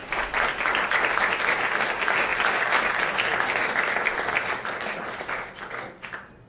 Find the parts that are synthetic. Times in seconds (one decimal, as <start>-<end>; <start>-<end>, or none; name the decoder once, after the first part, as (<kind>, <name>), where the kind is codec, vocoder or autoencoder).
none